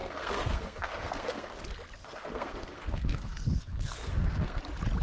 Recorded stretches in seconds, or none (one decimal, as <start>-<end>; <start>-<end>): 1.6-2.0; 4.6-5.0